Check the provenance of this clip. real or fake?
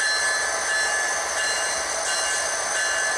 real